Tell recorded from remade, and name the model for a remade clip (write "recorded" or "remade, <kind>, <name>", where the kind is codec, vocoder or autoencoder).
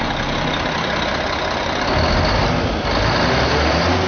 recorded